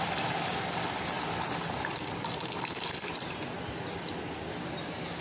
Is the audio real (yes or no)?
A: yes